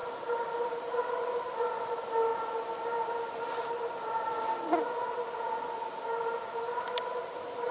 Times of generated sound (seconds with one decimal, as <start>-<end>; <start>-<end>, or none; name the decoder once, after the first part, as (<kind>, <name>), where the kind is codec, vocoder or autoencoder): 0.0-0.9 (vocoder, BigVGAN v2)